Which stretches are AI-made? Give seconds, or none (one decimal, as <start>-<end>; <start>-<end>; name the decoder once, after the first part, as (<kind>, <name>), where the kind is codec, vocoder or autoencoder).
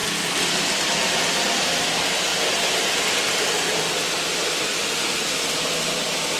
none